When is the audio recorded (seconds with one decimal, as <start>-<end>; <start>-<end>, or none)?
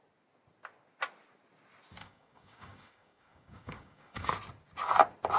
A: 0.0-2.0; 4.3-5.4